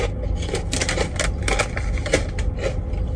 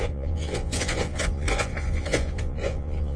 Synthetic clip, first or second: second